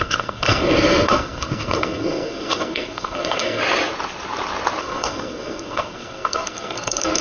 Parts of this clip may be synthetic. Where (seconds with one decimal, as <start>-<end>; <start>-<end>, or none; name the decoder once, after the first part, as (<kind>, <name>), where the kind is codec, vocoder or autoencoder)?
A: 0.0-3.6 (codec, SNAC); 4.8-7.2